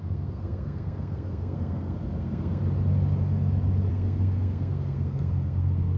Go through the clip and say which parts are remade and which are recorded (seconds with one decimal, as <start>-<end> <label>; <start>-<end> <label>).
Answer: 0.0-2.6 remade; 2.6-3.9 recorded; 3.9-6.0 remade